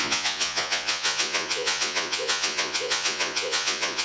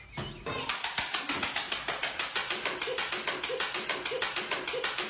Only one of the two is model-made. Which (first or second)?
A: first